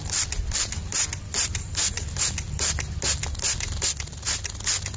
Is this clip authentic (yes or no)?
yes